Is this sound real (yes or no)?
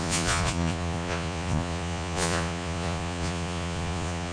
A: no